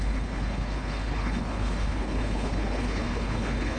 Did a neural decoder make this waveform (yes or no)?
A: yes